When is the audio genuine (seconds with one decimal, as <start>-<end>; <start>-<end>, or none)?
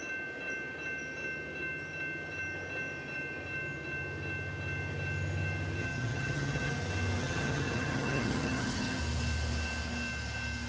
0.0-5.8; 6.7-7.2; 9.0-10.7